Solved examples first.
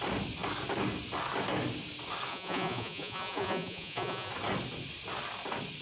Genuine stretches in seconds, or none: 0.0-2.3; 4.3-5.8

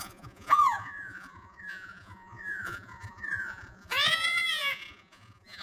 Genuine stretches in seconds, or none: none

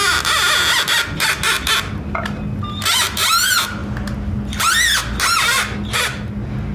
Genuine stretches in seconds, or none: 0.0-6.7

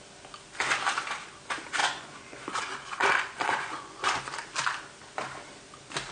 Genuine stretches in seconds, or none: 0.0-1.8; 4.2-6.1

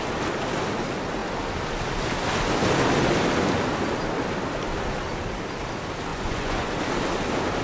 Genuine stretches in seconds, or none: 0.0-6.1; 6.7-7.6

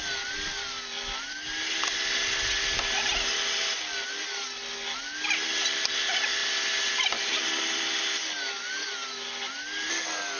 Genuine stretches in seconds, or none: 0.0-10.4

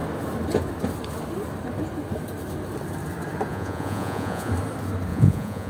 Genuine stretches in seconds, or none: 0.0-3.5; 4.5-5.1